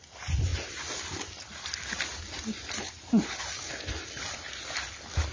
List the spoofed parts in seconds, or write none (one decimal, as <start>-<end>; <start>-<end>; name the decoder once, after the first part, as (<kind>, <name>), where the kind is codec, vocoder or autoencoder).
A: none